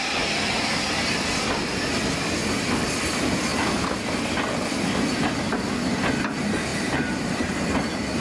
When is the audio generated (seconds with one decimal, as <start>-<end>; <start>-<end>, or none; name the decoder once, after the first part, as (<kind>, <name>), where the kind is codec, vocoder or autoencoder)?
none